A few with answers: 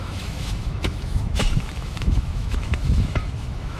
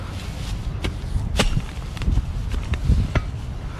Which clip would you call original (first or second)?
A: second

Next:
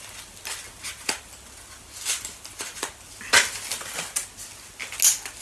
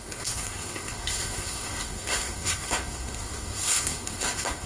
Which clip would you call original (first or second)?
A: first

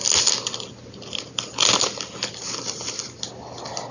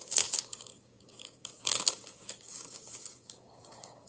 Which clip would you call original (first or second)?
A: first